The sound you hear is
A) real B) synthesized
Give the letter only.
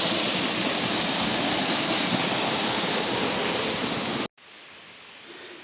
A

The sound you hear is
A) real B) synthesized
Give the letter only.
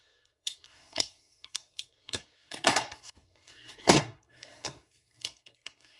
B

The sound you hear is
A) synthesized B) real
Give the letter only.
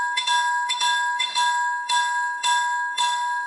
A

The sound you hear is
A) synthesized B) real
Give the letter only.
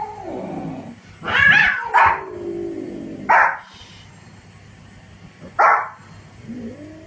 B